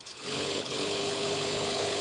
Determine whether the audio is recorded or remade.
remade